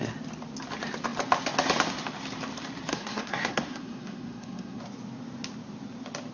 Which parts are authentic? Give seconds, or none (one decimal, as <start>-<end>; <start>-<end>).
0.0-2.9; 4.8-6.3